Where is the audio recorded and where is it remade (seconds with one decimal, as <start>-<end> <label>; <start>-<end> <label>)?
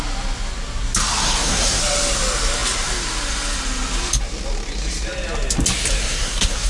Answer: 0.0-1.2 recorded; 1.2-1.8 remade; 1.8-6.0 recorded; 6.0-6.7 remade